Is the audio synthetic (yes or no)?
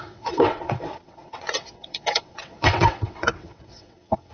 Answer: yes